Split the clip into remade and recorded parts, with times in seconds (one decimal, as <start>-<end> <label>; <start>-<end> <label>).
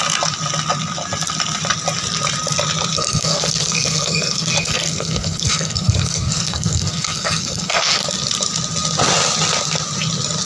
0.0-2.9 recorded; 2.9-8.0 remade; 8.0-10.4 recorded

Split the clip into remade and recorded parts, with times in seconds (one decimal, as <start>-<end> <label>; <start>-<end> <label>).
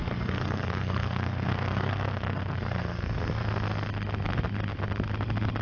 0.0-3.4 remade; 3.4-5.6 recorded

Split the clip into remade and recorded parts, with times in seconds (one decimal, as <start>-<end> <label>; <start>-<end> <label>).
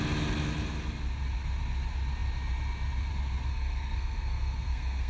0.0-3.5 recorded; 3.5-5.1 remade